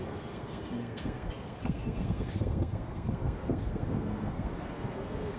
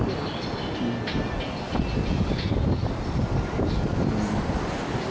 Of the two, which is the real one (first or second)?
second